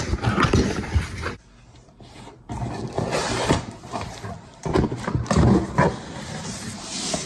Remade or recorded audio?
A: recorded